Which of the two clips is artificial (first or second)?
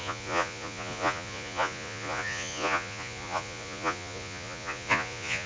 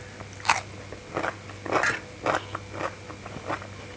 first